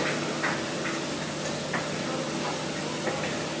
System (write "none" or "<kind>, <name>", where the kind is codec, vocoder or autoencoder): none